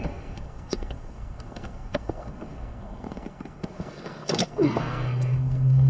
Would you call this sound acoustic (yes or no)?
no